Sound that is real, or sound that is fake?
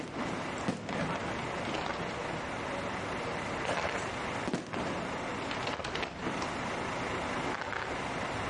real